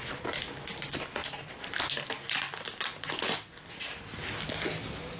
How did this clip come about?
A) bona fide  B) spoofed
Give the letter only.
A